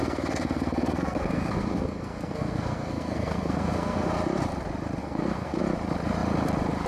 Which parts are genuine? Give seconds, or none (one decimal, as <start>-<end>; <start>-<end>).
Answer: 4.1-5.0; 5.6-6.9